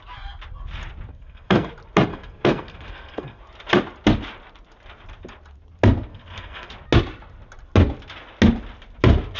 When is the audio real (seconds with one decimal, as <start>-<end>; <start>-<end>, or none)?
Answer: 0.0-1.1; 1.7-2.1; 3.4-6.1; 6.7-9.4